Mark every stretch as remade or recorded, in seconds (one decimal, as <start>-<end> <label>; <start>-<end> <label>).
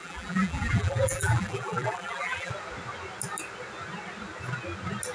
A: 0.0-2.5 remade; 2.5-5.1 recorded